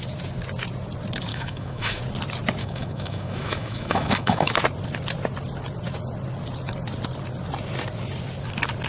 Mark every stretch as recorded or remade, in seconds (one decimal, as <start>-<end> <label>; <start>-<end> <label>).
0.0-1.3 recorded; 1.3-2.0 remade; 2.0-2.6 recorded; 2.6-4.5 remade; 4.5-8.9 recorded